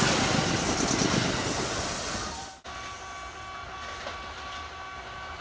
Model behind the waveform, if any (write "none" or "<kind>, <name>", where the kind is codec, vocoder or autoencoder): none